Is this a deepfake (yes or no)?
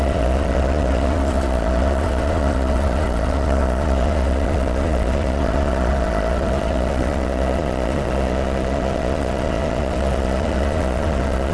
yes